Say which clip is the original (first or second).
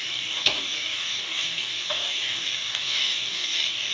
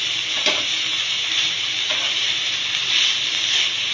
second